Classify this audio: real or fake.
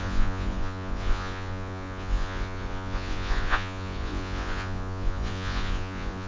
fake